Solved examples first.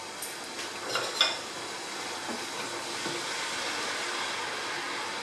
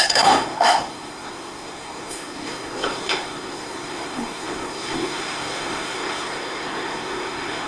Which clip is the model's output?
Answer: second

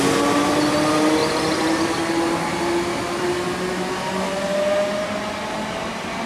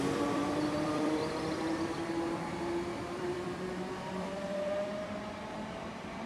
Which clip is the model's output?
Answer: second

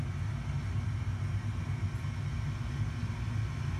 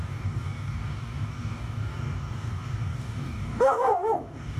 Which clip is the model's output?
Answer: second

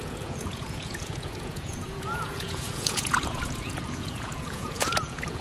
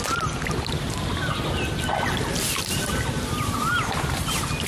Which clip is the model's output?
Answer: first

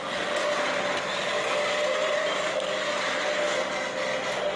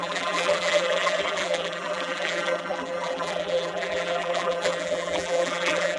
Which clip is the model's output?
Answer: second